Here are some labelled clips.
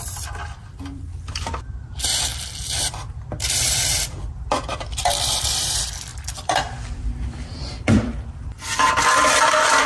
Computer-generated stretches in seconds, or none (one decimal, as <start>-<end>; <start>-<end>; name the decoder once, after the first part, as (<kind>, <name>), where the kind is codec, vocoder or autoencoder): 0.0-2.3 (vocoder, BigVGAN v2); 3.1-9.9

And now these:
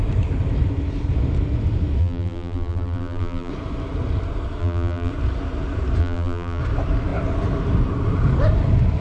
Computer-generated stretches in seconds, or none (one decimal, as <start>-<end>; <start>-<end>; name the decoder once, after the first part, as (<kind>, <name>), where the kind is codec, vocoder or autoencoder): 2.0-3.5 (vocoder, BigVGAN v2); 4.6-5.1; 6.0-6.6

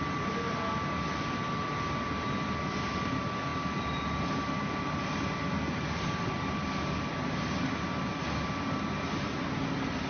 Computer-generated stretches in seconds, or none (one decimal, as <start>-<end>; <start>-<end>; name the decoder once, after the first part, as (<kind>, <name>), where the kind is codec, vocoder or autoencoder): none

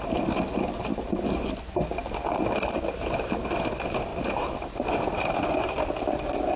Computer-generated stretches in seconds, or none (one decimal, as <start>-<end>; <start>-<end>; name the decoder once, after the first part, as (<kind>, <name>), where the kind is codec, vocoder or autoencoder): 0.9-1.5 (vocoder, BigVGAN v2); 4.1-5.5

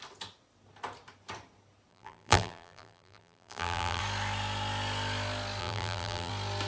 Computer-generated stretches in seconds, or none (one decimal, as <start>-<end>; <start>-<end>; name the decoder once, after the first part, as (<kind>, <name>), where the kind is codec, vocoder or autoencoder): 1.9-4.0 (vocoder, BigVGAN v2); 5.6-6.3

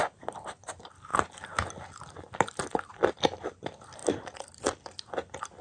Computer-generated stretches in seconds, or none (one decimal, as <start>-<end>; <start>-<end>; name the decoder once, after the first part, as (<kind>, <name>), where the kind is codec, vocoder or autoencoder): none

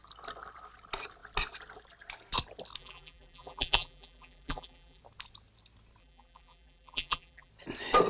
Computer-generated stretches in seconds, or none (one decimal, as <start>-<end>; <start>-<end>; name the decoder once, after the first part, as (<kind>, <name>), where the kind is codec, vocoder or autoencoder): 2.8-5.0 (vocoder, BigVGAN v2); 6.0-7.5

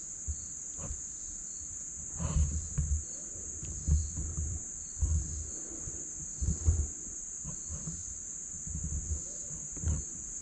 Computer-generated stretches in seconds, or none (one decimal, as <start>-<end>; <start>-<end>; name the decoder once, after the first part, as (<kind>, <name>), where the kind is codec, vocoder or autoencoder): 6.3-10.0 (vocoder, BigVGAN v2)